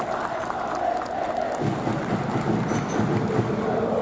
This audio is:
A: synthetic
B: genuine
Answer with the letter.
B